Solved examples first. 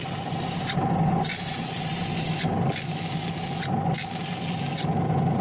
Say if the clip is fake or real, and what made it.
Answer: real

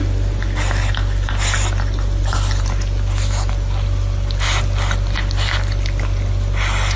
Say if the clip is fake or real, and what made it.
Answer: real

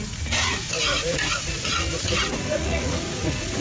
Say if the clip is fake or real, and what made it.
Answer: fake, vocoder, Vocos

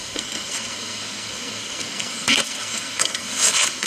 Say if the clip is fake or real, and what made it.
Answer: fake, codec, SNAC